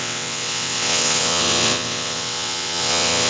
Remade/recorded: remade